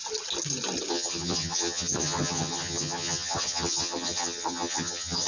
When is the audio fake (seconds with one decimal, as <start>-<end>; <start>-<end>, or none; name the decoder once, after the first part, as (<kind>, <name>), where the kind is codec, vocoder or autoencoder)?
0.9-5.3 (vocoder, HiFi-GAN)